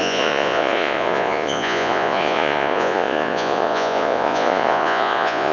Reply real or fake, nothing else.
fake